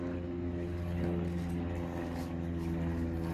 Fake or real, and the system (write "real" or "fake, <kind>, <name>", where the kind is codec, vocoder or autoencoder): real